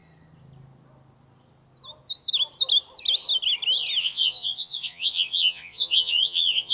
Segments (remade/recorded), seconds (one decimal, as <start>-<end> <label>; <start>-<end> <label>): 0.0-4.0 recorded; 4.0-6.7 remade